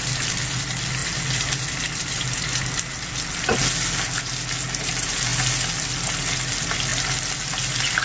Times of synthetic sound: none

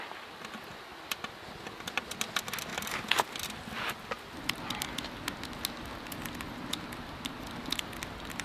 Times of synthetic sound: none